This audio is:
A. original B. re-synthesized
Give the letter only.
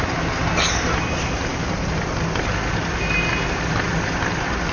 A